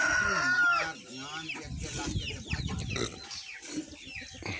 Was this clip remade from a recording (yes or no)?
no